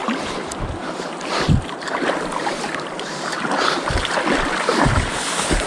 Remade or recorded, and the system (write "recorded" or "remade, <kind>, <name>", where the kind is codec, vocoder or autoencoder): recorded